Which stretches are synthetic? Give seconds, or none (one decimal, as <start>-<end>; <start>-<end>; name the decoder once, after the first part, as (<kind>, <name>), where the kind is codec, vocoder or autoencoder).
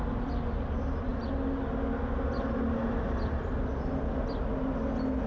none